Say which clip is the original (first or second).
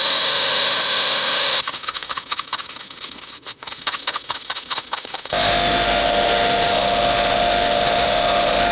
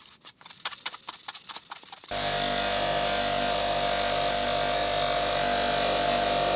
second